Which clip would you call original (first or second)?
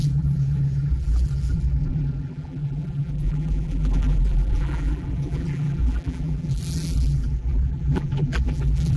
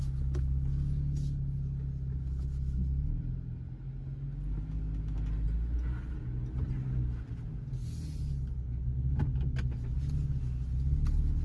second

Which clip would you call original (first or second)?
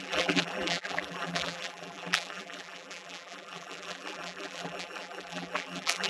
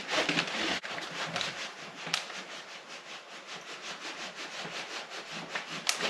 second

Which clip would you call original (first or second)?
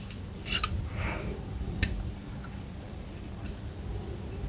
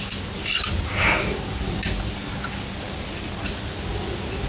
second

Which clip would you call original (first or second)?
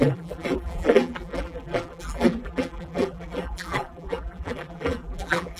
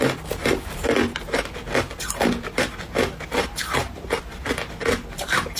second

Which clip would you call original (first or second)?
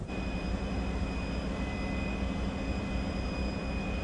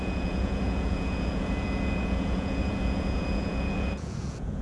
first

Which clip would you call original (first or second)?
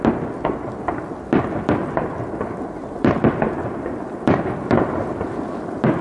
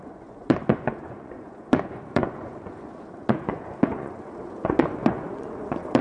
first